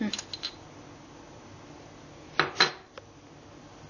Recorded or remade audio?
recorded